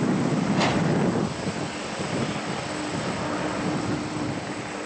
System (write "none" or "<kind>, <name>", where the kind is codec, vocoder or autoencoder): none